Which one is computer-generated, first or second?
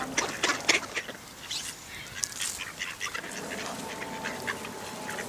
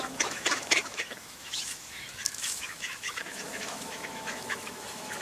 second